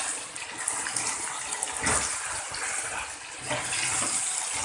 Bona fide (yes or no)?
yes